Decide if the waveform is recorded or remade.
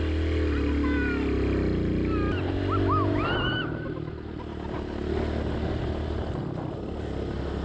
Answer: recorded